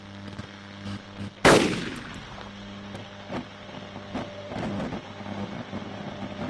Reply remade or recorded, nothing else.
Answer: recorded